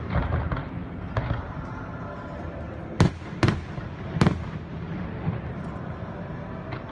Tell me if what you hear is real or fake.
real